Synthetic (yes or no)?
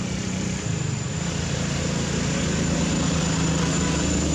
no